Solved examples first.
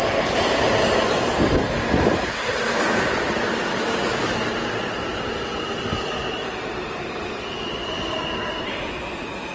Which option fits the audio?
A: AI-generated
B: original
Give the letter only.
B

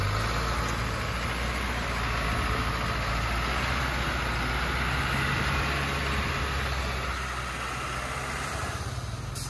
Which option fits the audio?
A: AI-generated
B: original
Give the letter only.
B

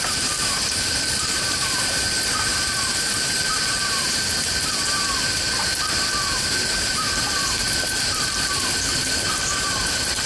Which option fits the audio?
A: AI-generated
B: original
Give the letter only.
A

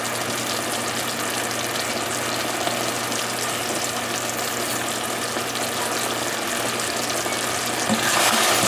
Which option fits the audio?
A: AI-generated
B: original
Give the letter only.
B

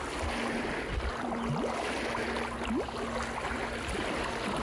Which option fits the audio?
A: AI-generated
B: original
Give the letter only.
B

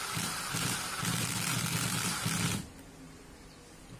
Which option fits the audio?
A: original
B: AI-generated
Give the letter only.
A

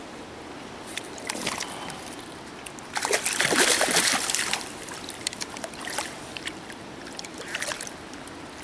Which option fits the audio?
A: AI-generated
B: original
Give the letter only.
A